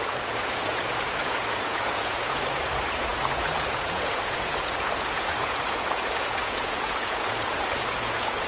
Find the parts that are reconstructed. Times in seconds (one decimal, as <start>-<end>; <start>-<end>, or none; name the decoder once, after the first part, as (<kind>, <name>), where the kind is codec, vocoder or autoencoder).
0.0-8.5 (vocoder, Vocos)